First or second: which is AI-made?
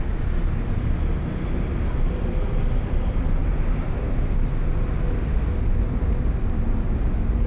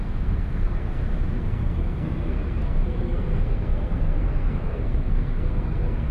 second